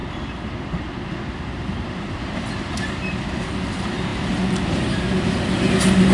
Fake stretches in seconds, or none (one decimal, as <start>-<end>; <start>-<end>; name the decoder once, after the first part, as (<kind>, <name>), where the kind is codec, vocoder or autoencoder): none